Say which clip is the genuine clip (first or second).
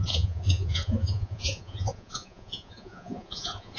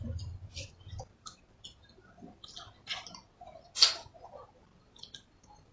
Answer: second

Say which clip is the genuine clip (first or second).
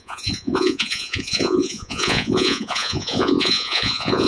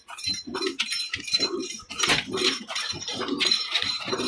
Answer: second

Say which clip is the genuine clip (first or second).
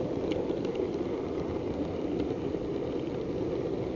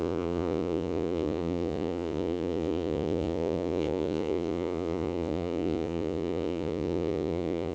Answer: first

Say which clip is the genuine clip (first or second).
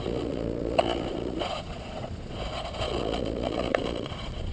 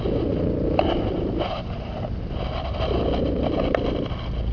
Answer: second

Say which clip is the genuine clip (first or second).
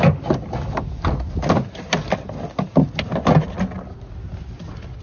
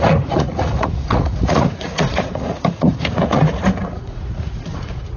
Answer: first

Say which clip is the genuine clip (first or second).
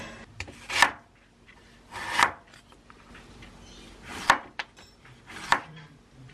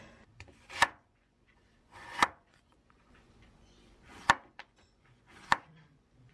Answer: first